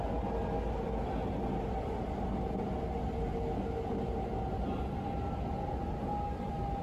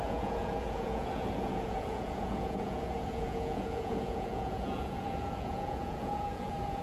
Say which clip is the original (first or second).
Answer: first